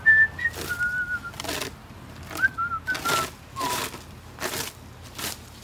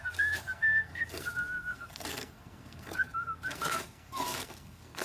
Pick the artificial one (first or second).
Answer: second